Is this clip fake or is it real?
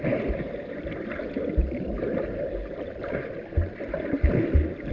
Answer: real